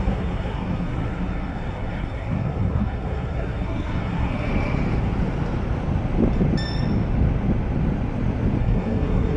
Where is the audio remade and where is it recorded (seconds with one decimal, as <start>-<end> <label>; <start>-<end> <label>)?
0.0-4.5 remade; 4.5-8.6 recorded; 8.6-9.4 remade